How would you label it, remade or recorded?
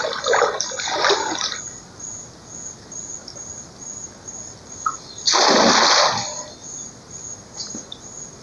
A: recorded